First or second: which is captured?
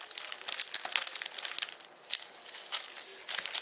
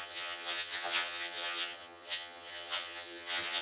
first